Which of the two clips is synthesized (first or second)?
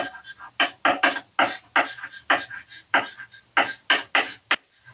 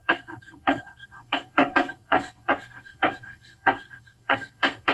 second